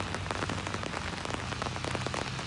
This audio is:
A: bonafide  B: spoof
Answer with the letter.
A